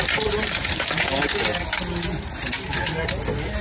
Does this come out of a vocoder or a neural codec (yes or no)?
no